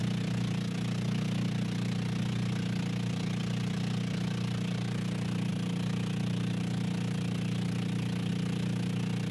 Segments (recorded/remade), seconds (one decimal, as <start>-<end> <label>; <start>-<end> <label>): 0.0-9.3 recorded